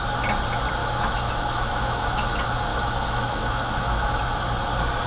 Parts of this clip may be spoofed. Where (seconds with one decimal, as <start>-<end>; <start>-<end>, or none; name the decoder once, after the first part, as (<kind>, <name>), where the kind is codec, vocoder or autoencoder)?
0.8-2.3 (autoencoder, DAC-VAE); 2.7-4.2